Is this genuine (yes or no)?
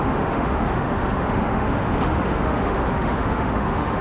no